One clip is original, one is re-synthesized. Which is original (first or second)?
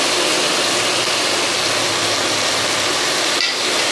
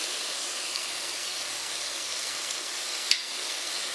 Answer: first